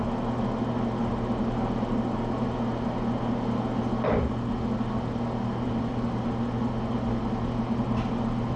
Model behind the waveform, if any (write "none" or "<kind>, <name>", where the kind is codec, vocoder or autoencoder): none